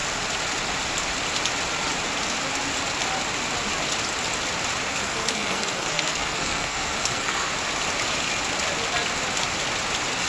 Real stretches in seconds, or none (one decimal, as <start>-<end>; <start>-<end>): 0.0-4.9; 7.5-10.3